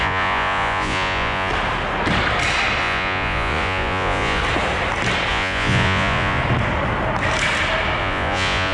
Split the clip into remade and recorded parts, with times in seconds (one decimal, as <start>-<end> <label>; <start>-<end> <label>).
0.0-1.5 remade; 1.5-2.8 recorded; 2.8-4.4 remade; 4.4-5.3 recorded; 5.3-6.4 remade; 6.4-8.0 recorded; 8.0-8.7 remade